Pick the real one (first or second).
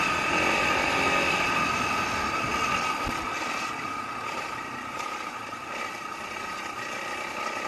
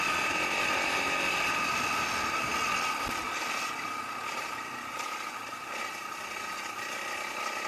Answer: second